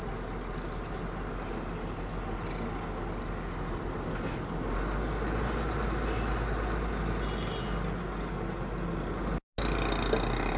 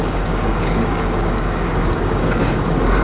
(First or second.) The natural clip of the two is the first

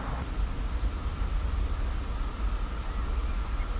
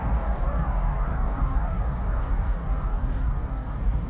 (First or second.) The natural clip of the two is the first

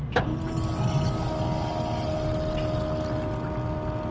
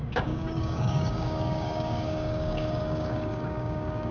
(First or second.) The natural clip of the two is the first